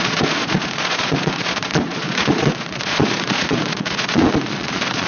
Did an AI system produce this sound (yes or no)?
yes